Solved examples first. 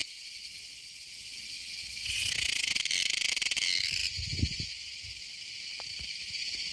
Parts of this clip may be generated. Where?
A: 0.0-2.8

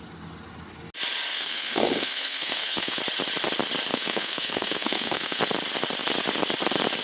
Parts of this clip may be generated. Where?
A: 1.3-3.0; 3.9-5.4

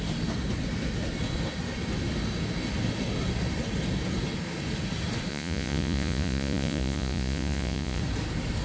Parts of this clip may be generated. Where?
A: 5.3-8.0

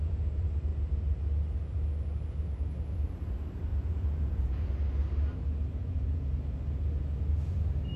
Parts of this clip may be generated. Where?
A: 3.7-4.7; 5.8-6.3

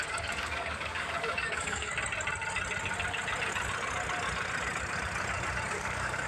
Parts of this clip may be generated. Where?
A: 0.0-1.9; 5.7-6.3

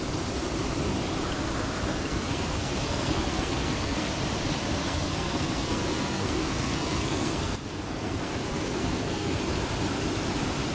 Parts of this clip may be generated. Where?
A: 1.9-4.1; 4.8-9.4